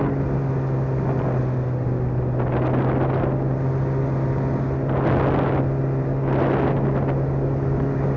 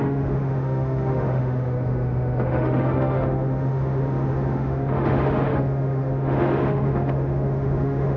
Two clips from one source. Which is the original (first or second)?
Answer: first